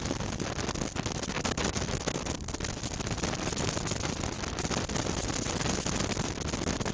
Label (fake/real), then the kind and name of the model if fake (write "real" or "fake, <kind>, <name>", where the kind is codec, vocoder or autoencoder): real